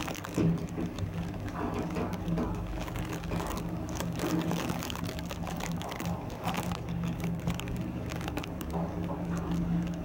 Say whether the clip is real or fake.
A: fake